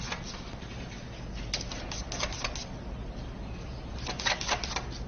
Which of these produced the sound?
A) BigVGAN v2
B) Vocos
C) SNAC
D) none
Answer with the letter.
D